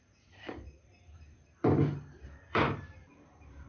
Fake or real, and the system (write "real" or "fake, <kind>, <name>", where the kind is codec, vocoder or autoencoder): fake, vocoder, BigVGAN v2